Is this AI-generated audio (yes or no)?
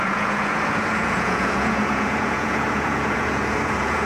yes